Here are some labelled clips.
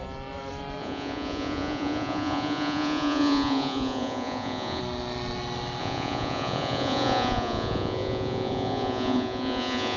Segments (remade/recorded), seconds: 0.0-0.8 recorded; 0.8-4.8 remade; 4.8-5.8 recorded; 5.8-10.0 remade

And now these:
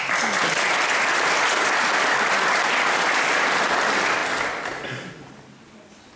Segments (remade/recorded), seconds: 0.0-6.2 recorded

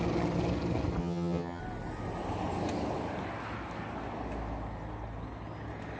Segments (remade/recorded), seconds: 0.0-1.0 recorded; 1.0-1.6 remade; 1.6-6.0 recorded